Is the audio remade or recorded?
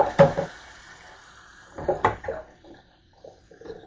remade